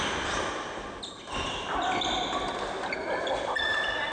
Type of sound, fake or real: real